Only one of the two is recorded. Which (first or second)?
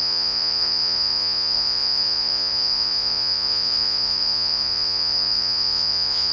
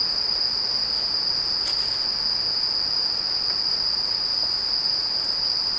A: second